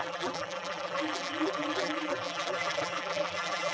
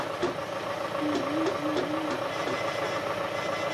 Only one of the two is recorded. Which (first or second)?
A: second